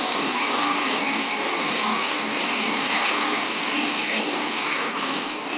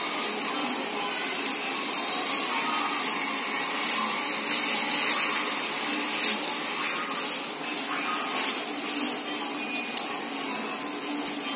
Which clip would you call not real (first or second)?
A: first